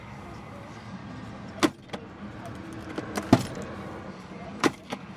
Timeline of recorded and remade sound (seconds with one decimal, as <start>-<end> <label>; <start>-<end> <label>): 0.0-1.0 remade; 1.0-4.1 recorded; 4.1-5.2 remade